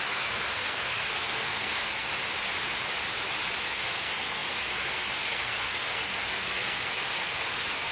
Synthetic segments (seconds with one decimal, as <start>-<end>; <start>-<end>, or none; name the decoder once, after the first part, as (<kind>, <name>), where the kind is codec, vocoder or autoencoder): 0.0-2.1 (codec, SNAC); 3.6-7.9

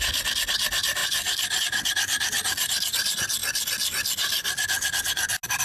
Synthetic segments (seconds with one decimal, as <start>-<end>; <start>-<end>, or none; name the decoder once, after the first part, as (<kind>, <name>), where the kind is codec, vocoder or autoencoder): none

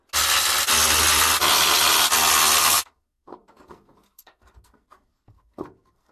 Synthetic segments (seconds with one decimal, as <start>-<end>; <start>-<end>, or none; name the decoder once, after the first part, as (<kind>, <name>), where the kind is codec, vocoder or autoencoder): 2.6-6.1 (codec, SNAC)